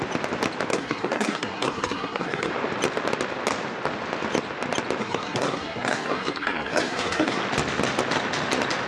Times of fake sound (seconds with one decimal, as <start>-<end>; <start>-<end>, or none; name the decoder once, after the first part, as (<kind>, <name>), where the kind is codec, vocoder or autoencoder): 0.7-2.5 (codec, SNAC); 5.0-7.4